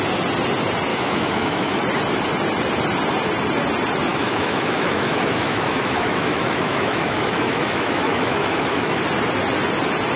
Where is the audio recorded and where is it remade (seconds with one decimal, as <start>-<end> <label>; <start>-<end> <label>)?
0.0-0.9 recorded; 0.9-1.8 remade; 1.8-4.1 recorded; 4.1-9.0 remade; 9.0-10.2 recorded